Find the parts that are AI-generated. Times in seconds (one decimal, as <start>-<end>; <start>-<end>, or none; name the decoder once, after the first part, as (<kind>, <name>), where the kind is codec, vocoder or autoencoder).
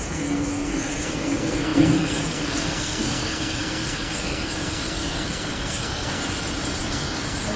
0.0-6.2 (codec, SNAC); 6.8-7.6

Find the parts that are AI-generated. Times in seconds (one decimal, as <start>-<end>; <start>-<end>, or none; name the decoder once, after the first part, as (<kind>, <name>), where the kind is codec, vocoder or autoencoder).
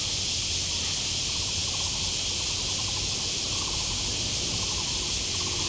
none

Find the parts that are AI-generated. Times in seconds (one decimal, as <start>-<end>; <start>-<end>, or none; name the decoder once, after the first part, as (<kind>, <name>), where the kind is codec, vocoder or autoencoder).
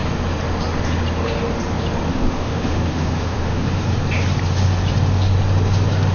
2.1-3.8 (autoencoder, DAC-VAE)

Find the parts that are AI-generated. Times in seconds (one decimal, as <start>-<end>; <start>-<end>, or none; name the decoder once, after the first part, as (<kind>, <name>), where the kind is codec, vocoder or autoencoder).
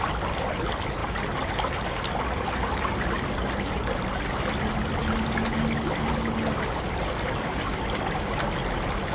none